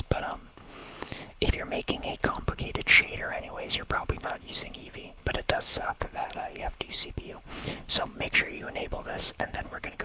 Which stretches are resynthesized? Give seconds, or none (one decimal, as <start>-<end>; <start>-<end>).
0.0-8.1; 8.6-10.0